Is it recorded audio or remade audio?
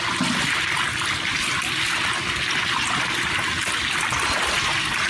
recorded